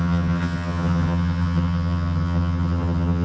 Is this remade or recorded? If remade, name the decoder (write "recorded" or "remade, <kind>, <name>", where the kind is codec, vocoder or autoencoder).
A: remade, vocoder, HiFi-GAN